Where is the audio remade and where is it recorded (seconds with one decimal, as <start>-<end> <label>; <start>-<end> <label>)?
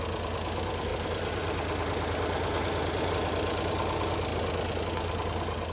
0.0-5.7 recorded